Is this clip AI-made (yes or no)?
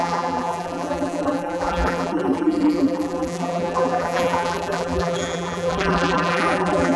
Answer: yes